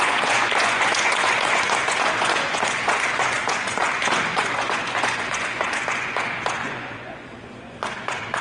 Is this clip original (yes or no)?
no